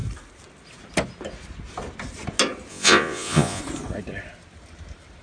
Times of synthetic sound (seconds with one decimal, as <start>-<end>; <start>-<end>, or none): 2.7-3.6